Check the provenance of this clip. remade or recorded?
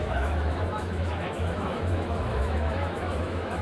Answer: remade